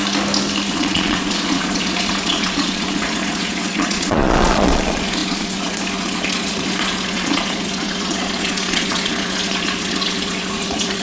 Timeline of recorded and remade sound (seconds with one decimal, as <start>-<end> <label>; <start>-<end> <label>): 0.0-0.7 recorded; 0.7-11.0 remade